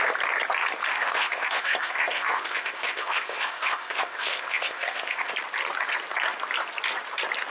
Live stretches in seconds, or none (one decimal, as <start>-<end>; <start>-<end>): 0.0-0.9; 5.3-7.5